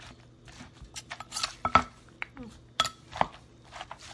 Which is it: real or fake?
real